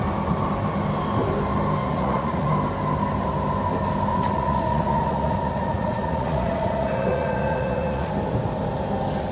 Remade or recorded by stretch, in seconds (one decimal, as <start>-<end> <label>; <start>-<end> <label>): 0.0-1.8 recorded; 1.8-2.5 remade; 2.5-4.1 recorded; 4.1-8.1 remade; 8.1-9.3 recorded